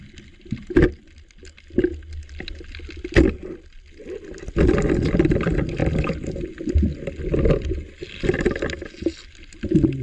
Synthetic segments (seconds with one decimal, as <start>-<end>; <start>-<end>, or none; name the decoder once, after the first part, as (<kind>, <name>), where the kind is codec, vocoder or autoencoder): none